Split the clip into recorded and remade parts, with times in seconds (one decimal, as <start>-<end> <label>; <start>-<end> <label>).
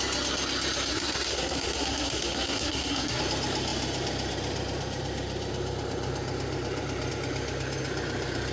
0.0-0.9 recorded; 0.9-3.2 remade; 3.2-8.5 recorded